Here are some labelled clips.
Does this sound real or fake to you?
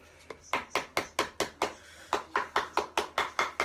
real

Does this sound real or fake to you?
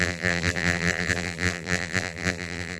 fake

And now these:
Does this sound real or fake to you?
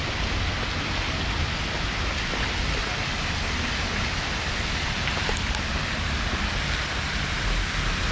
real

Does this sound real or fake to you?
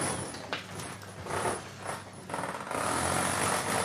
real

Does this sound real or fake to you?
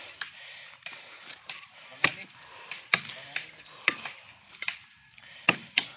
fake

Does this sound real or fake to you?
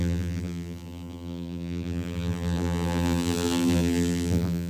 fake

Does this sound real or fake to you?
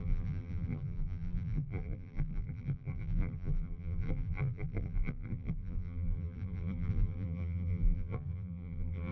fake